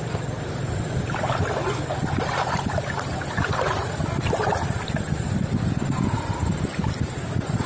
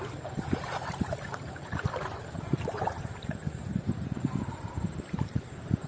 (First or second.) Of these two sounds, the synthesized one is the second